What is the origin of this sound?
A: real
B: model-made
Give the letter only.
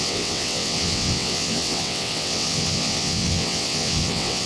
B